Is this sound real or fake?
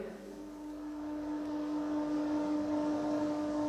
fake